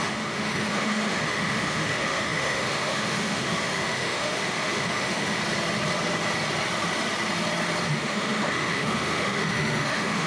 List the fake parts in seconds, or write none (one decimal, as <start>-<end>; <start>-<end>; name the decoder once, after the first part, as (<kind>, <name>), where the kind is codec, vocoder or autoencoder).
0.0-5.4 (autoencoder, DAC-VAE); 7.9-10.3